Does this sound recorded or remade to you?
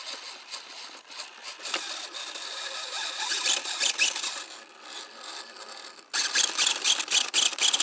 recorded